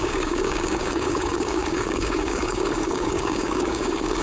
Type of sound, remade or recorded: remade